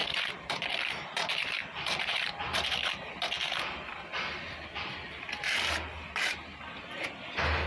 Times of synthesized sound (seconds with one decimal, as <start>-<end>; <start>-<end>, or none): 0.0-3.3; 3.9-5.4